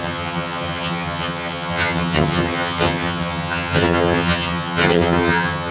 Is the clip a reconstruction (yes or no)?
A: yes